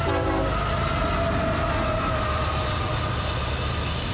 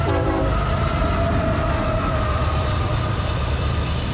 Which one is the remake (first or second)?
second